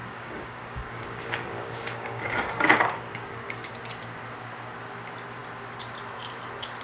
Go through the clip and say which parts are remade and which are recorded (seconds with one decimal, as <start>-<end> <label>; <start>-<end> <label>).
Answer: 0.0-3.7 remade; 3.7-6.8 recorded